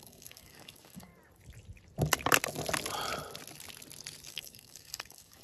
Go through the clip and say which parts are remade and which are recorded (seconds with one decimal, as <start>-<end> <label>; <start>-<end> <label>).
0.0-1.1 remade; 1.1-4.3 recorded; 4.3-5.4 remade